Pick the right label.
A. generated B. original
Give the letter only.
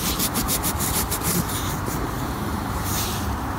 A